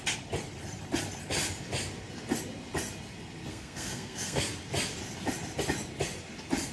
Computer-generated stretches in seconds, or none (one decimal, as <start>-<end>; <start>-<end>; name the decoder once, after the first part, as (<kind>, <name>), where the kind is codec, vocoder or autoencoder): 3.5-4.5 (codec, SNAC)